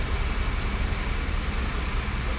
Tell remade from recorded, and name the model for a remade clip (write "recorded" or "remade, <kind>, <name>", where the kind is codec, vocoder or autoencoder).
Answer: recorded